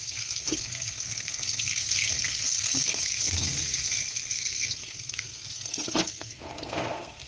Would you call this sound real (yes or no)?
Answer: no